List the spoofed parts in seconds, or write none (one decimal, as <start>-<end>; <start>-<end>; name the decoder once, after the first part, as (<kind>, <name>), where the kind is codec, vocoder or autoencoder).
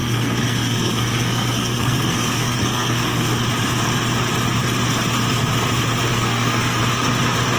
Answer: 0.0-3.3 (codec, SNAC); 6.1-6.8